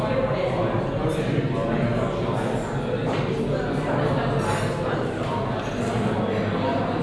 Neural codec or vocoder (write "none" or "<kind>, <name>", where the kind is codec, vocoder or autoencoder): none